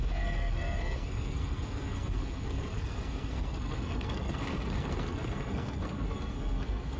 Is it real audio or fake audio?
fake